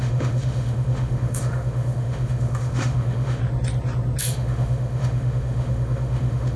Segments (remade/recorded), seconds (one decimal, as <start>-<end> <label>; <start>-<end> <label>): 0.0-3.4 remade; 3.4-4.2 recorded; 4.2-6.6 remade